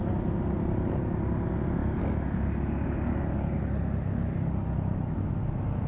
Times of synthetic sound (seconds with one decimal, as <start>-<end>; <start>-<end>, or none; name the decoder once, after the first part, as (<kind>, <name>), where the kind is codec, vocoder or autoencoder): none